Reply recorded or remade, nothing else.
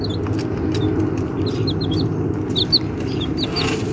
recorded